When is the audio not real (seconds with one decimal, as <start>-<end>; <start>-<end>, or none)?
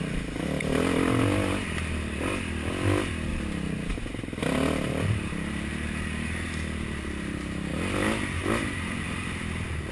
none